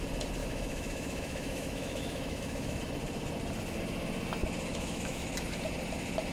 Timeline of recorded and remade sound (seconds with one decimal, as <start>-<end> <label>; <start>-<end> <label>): 0.0-0.4 recorded; 0.4-2.8 remade; 2.8-4.7 recorded; 4.7-5.3 remade; 5.3-6.3 recorded